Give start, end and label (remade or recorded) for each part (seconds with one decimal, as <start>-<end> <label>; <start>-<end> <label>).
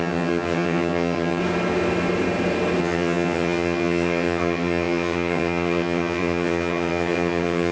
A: 0.0-1.4 remade; 1.4-2.8 recorded; 2.8-7.7 remade